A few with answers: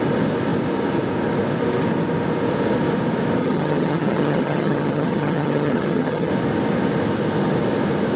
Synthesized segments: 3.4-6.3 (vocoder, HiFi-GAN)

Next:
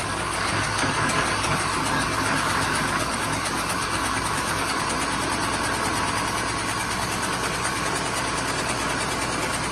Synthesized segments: 0.0-4.8 (codec, DAC); 6.8-7.9